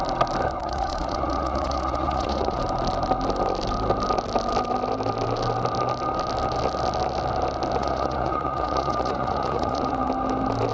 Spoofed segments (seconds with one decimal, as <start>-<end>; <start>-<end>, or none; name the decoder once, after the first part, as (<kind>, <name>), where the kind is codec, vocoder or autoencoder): 0.6-2.6 (vocoder, Vocos); 7.8-10.1